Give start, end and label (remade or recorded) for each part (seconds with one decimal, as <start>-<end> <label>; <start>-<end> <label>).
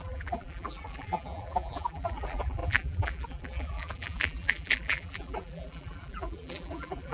0.0-7.1 remade